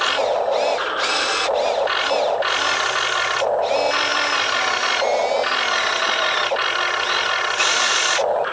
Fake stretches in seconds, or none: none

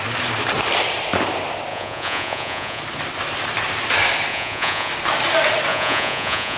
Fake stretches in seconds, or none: 1.7-2.8 (vocoder, Vocos); 4.3-4.9; 5.7-6.6

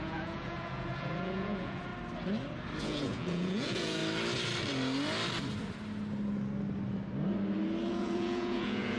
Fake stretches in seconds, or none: 0.0-1.9 (vocoder, Vocos); 2.8-4.0; 7.9-9.0

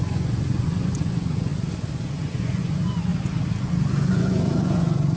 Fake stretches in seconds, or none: 0.0-1.5 (vocoder, Vocos); 2.1-3.1; 3.6-5.2

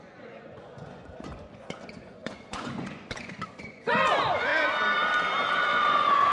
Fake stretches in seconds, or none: 0.0-4.5 (vocoder, Vocos); 5.5-6.3

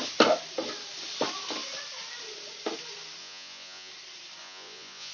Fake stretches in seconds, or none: 3.2-3.9 (vocoder, Vocos); 4.4-5.1

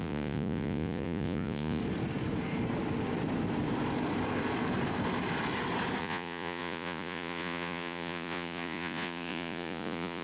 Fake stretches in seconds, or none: 0.0-1.8 (vocoder, Vocos); 6.0-10.2